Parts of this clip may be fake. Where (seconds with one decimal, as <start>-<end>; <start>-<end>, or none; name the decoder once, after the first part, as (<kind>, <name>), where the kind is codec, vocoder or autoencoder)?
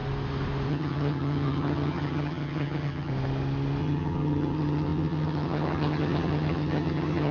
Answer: 0.7-3.1 (vocoder, HiFi-GAN); 3.8-7.3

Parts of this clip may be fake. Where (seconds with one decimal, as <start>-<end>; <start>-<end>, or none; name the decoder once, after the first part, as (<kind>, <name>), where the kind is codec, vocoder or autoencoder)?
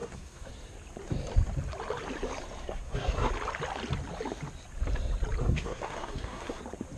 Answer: 0.0-0.5 (codec, SNAC); 2.6-3.3; 5.4-6.6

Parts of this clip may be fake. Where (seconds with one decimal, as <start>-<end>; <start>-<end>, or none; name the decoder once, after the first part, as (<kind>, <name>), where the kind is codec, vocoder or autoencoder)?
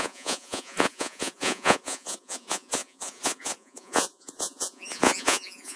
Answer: 0.0-5.8 (vocoder, Vocos)